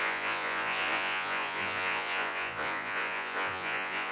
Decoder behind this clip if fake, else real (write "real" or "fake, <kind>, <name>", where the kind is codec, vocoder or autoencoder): fake, vocoder, Vocos